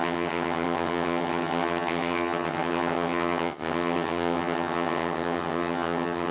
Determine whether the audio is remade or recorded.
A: remade